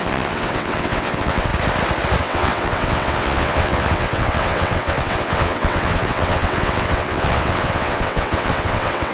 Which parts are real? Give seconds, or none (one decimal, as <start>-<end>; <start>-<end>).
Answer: 1.5-2.2